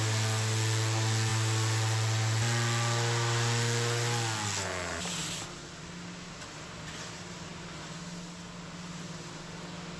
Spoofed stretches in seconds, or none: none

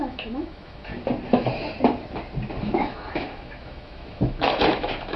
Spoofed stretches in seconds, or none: 0.0-0.9 (autoencoder, DAC-VAE); 2.6-5.2

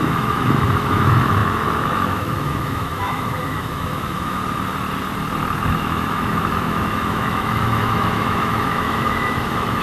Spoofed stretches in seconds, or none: 0.0-4.4 (autoencoder, DAC-VAE); 5.7-9.8

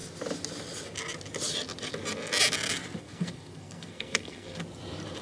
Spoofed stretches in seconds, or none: 3.0-4.6 (codec, SNAC)

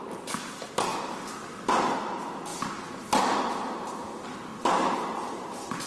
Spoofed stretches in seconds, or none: none

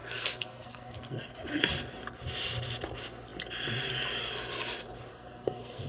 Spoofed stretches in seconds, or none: 0.0-1.3 (codec, SNAC); 5.1-5.9

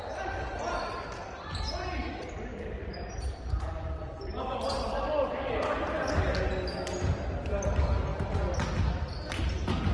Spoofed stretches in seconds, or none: 2.5-4.2 (vocoder, BigVGAN v2)

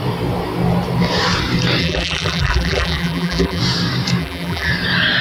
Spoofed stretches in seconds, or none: 1.8-3.6 (vocoder, BigVGAN v2); 4.2-4.7